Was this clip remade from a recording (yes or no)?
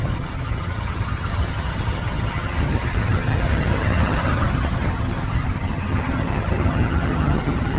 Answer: yes